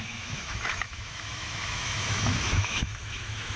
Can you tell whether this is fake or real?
fake